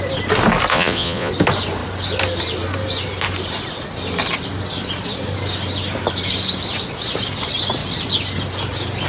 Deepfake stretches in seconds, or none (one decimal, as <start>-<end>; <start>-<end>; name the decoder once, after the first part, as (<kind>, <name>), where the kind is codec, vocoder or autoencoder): 0.7-1.3 (vocoder, Vocos)